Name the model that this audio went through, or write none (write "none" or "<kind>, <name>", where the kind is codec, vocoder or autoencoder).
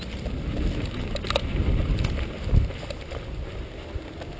none